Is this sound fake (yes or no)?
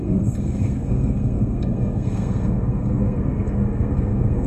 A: yes